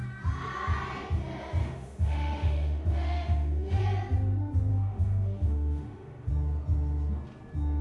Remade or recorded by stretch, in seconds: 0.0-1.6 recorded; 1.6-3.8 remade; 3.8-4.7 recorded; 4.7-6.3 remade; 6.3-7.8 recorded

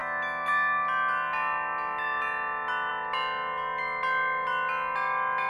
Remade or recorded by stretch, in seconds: 0.0-5.5 recorded

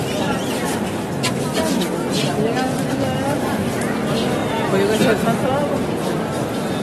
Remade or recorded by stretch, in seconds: 0.0-6.8 recorded

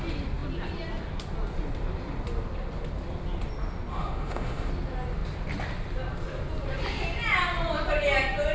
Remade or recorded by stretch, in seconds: 0.0-3.9 recorded; 3.9-4.7 remade; 4.7-8.5 recorded

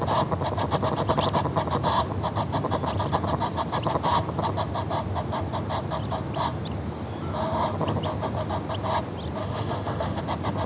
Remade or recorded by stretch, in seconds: 0.0-9.4 recorded; 9.4-10.2 remade; 10.2-10.7 recorded

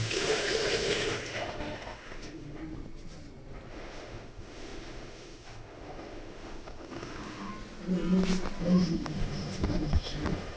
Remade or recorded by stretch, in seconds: 0.0-2.6 remade; 2.6-3.7 recorded; 3.7-7.5 remade; 7.5-8.6 recorded; 8.6-10.6 remade